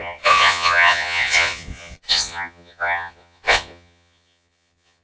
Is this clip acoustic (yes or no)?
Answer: no